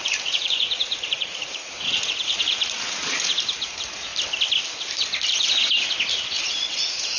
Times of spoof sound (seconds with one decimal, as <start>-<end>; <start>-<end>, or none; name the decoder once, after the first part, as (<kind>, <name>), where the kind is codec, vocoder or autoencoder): 0.0-4.1 (vocoder, Vocos); 6.4-7.2